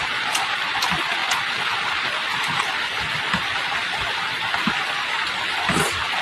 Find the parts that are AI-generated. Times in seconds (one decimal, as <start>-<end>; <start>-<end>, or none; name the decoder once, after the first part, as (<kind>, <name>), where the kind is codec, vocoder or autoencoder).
none